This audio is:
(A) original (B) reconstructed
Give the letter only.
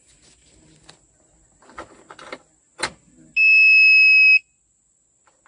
A